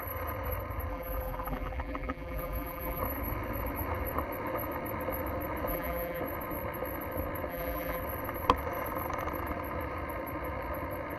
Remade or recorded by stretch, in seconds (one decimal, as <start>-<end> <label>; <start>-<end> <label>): 0.0-0.9 recorded; 0.9-3.0 remade; 3.0-5.7 recorded; 5.7-6.2 remade; 6.2-7.5 recorded; 7.5-8.0 remade; 8.0-11.2 recorded